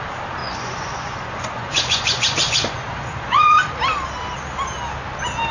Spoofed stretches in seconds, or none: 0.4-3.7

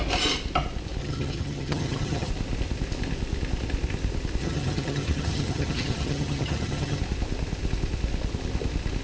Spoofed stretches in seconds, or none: 1.0-2.3; 4.4-7.0